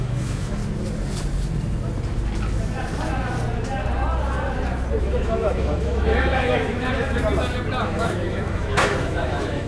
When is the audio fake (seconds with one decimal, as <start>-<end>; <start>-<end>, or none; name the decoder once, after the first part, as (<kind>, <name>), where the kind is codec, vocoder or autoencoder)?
0.0-0.6 (autoencoder, DAC-VAE); 5.0-7.2; 7.8-9.7